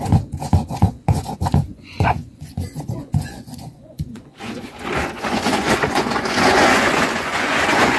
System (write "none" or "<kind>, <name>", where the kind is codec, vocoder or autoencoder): vocoder, Vocos